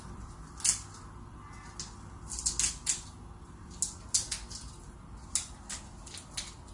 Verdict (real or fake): real